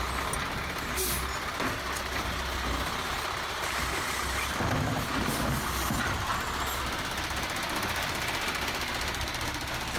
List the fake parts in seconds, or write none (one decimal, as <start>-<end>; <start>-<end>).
none